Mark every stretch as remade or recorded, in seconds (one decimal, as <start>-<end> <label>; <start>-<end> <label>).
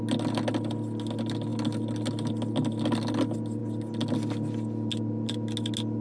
0.0-6.0 recorded